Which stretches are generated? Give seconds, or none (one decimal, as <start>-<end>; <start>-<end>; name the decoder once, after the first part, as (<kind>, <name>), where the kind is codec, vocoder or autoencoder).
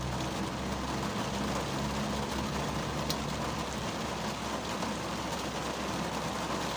none